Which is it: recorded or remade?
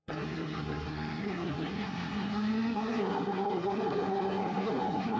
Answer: remade